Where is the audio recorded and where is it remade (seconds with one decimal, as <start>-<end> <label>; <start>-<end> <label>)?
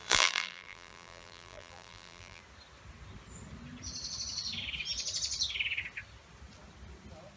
0.0-2.4 remade; 2.4-7.4 recorded